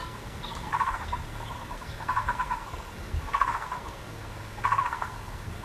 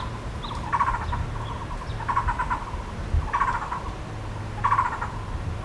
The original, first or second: second